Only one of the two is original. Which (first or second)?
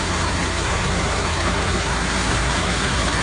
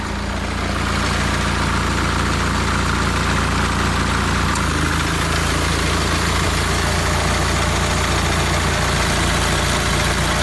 second